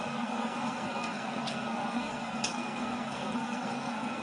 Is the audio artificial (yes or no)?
yes